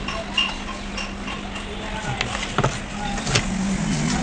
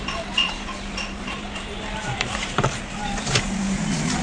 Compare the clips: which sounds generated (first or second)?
second